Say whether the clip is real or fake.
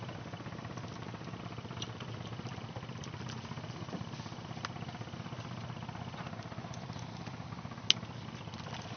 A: real